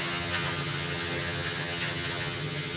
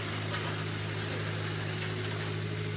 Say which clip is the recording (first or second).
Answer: second